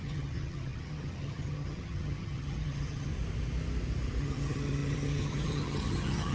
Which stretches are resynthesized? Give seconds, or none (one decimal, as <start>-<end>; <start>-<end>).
0.0-3.1; 4.2-6.3